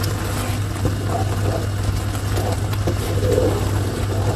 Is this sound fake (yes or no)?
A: no